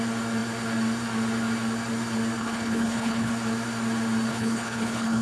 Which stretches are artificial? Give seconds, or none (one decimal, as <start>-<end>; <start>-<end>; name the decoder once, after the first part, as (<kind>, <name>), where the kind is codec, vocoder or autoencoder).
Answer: 2.4-3.3 (codec, HILCodec); 4.3-5.2